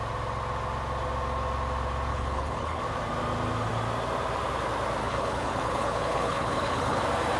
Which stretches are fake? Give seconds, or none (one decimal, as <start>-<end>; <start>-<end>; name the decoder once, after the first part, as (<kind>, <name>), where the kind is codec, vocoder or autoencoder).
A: 2.1-2.8 (codec, HILCodec); 5.0-7.0